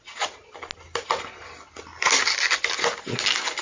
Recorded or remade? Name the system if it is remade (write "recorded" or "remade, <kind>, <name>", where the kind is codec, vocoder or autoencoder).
recorded